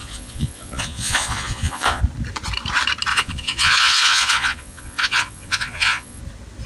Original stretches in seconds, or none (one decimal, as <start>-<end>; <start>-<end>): 2.0-3.1; 6.2-6.7